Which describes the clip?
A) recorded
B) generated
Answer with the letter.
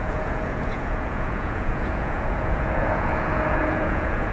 B